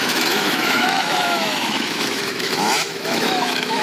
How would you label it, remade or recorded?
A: remade